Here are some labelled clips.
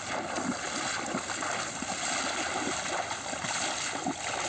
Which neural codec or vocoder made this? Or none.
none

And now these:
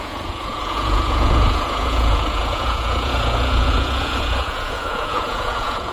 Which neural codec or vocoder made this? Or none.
vocoder, Vocos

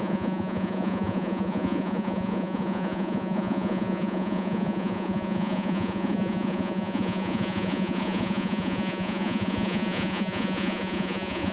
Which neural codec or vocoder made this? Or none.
vocoder, Vocos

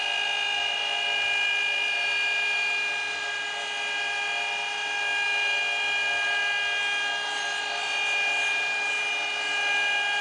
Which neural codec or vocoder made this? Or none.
none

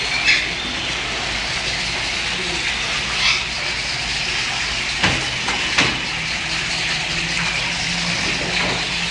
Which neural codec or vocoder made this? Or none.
none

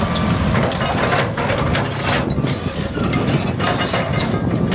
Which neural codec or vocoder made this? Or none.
none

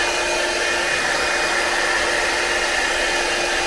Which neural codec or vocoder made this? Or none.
none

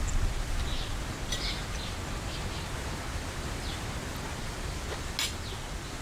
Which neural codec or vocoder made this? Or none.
none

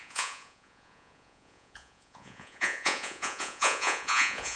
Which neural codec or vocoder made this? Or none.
vocoder, Vocos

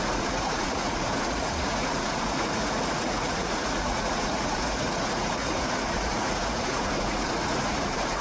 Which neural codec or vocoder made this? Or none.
vocoder, Vocos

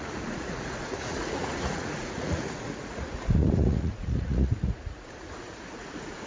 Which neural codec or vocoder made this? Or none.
vocoder, Vocos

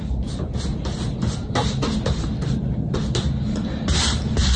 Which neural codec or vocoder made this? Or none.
none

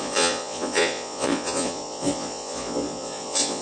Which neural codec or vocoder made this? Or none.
vocoder, Vocos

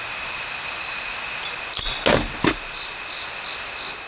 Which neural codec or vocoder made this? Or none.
none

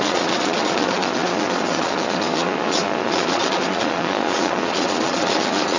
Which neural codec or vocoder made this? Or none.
vocoder, Vocos